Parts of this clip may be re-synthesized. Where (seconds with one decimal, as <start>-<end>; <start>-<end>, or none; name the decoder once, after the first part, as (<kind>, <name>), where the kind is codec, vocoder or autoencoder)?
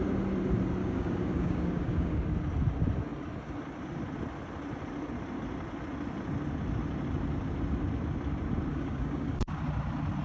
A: 0.8-2.2 (codec, DAC); 8.7-9.6